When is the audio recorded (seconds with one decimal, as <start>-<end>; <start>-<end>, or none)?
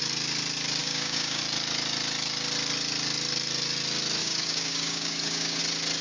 0.0-0.8; 1.4-4.2; 5.6-6.0